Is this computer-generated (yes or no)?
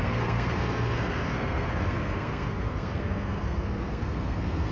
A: yes